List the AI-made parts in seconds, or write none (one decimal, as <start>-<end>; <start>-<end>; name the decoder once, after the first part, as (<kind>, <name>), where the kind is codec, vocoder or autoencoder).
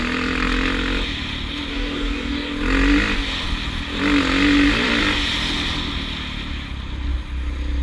1.7-2.5 (codec, DAC)